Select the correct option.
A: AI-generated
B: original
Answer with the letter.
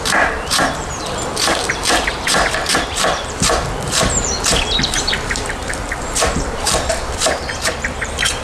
A